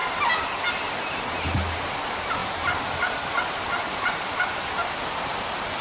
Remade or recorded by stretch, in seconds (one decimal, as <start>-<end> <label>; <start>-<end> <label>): 0.0-5.8 recorded